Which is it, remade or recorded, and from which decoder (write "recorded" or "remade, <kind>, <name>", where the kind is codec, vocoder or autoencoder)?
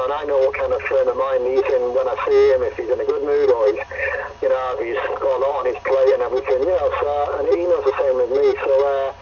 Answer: recorded